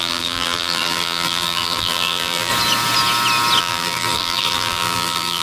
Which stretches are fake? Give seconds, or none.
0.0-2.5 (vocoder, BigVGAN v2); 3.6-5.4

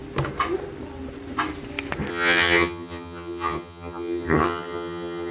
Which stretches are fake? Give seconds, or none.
2.1-5.3 (vocoder, HiFi-GAN)

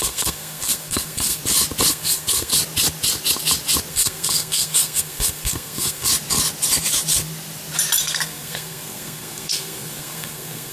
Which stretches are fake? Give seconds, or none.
0.0-1.4 (codec, SNAC); 1.9-2.5; 3.9-6.1; 8.0-10.7

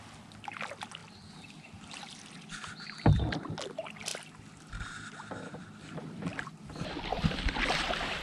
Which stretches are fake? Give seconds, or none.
1.0-3.5 (vocoder, BigVGAN v2); 6.3-7.0

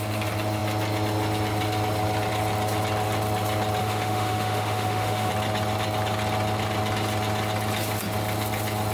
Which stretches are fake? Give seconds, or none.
3.8-5.3 (autoencoder, DAC-VAE)

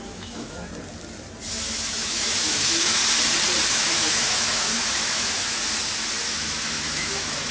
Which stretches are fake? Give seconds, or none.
0.0-0.7 (autoencoder, DAC-VAE); 1.5-3.0; 3.7-5.6; 6.2-7.5